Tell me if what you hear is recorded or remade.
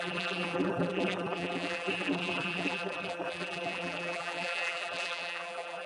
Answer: remade